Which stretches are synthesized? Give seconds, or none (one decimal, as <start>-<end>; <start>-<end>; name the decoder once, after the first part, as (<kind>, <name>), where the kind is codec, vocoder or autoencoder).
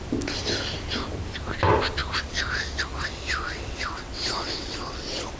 2.9-5.4 (vocoder, WaveNeXt)